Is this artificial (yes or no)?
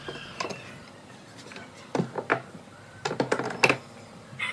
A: no